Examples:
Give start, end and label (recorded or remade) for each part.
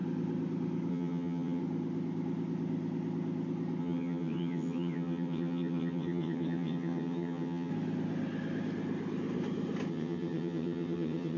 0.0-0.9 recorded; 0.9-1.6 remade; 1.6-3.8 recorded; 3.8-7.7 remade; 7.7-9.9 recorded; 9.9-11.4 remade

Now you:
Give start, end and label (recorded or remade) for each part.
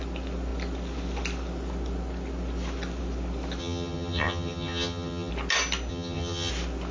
0.0-3.6 recorded; 3.6-5.3 remade; 5.3-5.9 recorded; 5.9-6.5 remade; 6.5-6.9 recorded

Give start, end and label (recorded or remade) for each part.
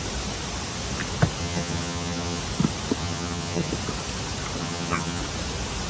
0.0-1.4 recorded; 1.4-2.4 remade; 2.4-3.0 recorded; 3.0-3.7 remade; 3.7-4.6 recorded; 4.6-5.2 remade; 5.2-5.9 recorded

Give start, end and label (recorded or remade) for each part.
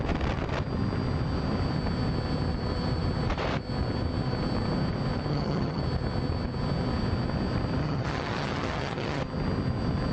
0.0-5.3 recorded; 5.3-5.8 remade; 5.8-7.8 recorded; 7.8-9.2 remade; 9.2-10.1 recorded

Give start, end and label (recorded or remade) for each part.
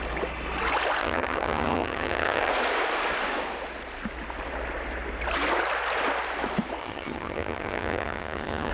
0.0-1.0 recorded; 1.0-2.5 remade; 2.5-6.8 recorded; 6.8-8.7 remade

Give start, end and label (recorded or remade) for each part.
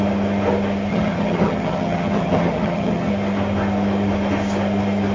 0.0-0.9 recorded; 0.9-3.1 remade; 3.1-5.1 recorded